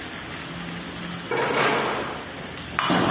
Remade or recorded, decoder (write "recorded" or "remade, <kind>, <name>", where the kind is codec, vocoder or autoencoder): recorded